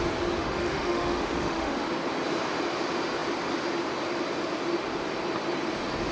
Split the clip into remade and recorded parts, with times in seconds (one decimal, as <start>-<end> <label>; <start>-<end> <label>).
0.0-0.4 recorded; 0.4-1.9 remade; 1.9-6.1 recorded